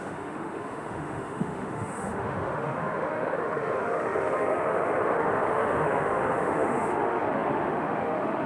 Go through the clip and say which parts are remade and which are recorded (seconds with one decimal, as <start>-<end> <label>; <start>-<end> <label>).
0.0-8.5 remade